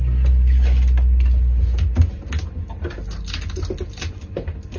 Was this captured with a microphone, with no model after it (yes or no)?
yes